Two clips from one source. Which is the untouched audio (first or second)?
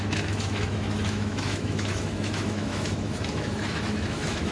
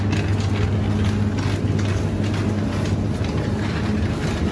second